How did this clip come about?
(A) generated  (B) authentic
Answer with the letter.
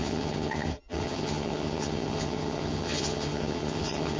A